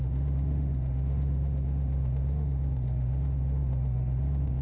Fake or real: fake